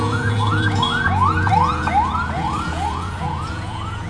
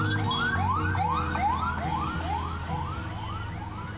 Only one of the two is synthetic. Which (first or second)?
first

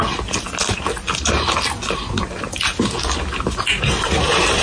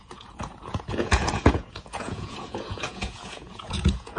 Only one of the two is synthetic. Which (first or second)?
second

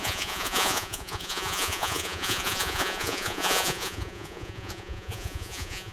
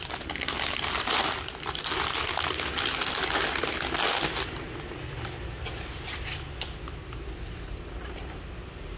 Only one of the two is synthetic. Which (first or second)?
first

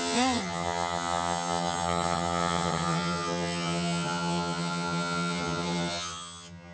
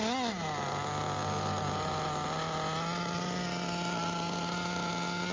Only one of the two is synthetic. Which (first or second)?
first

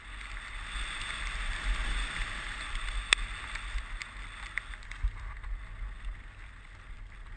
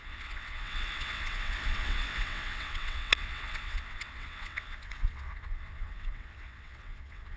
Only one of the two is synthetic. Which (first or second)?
second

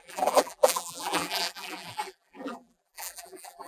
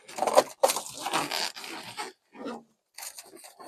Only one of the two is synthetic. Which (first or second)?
first